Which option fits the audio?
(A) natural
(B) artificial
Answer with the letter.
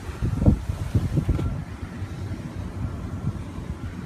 A